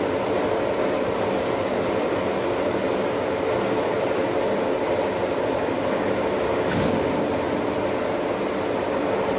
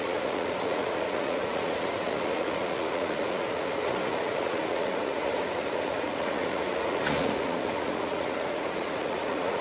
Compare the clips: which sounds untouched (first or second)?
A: first